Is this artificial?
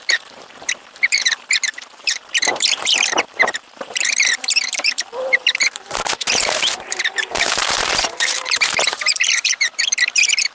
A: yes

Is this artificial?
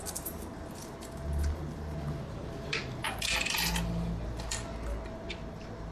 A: no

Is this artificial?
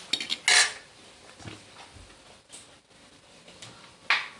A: no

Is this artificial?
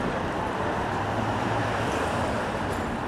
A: yes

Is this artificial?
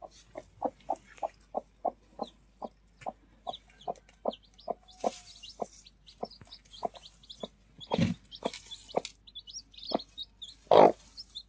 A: no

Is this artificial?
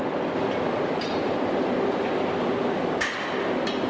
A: yes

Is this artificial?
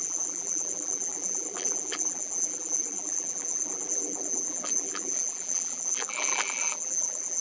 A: yes